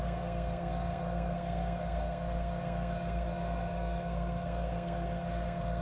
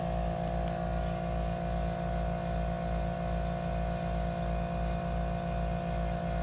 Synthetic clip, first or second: first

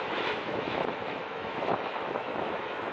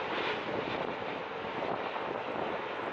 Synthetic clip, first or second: first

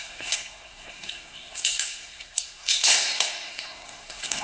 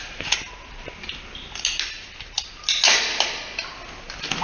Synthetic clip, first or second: first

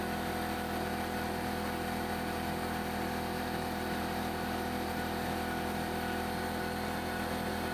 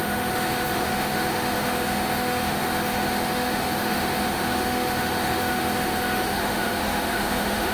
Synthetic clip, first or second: second